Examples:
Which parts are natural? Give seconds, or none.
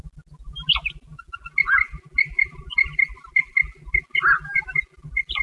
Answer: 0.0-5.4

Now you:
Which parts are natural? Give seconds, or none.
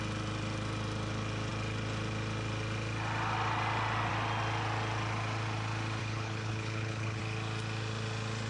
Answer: 0.0-6.0; 7.2-8.5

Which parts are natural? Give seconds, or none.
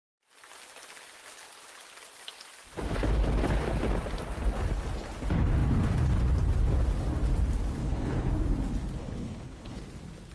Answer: 0.0-7.8; 8.3-9.0; 9.8-10.3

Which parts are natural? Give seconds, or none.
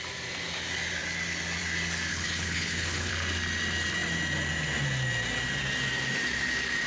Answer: 0.0-2.1; 3.1-6.9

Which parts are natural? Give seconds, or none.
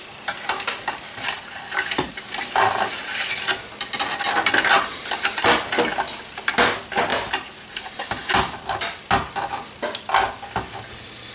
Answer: 0.0-11.3